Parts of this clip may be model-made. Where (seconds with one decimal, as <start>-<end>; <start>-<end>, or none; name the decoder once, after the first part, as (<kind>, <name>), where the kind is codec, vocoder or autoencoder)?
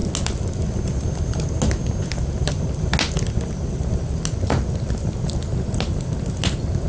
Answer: none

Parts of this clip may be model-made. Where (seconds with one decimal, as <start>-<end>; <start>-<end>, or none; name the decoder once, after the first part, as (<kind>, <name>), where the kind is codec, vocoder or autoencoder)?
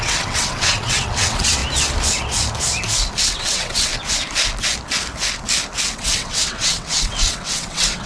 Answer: 0.0-1.6 (vocoder, WaveNeXt); 3.2-3.9; 5.9-8.1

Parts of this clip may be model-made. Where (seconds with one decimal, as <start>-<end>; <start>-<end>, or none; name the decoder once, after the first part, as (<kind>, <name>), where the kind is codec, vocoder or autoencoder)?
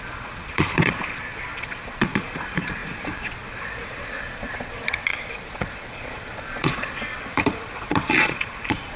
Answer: 0.0-9.0 (vocoder, Vocos)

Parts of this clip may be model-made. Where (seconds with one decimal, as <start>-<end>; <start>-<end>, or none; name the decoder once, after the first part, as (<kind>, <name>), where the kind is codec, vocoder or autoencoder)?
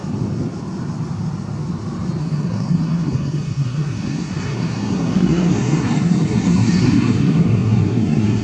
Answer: 2.2-8.4 (codec, SNAC)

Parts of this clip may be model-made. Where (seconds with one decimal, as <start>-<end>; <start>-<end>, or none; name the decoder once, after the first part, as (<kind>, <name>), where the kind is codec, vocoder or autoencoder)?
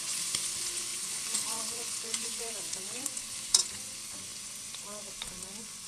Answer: 0.0-5.9 (vocoder, Vocos)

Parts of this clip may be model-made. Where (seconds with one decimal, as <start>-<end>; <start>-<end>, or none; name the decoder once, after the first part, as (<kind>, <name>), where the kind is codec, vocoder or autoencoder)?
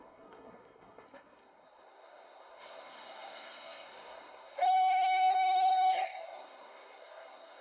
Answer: 0.0-7.6 (codec, SNAC)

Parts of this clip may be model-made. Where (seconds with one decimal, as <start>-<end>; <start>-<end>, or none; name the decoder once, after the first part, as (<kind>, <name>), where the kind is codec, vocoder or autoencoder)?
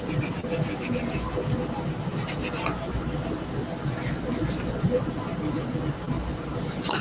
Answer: none